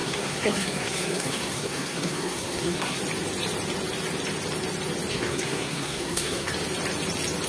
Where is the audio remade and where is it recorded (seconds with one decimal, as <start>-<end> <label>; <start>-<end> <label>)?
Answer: 0.0-3.0 remade; 3.0-5.1 recorded; 5.1-6.5 remade; 6.5-7.5 recorded